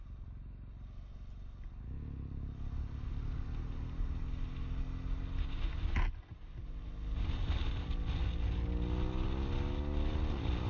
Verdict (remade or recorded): recorded